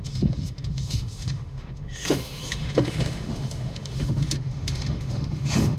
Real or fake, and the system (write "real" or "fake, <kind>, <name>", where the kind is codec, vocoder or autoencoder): fake, autoencoder, DAC-VAE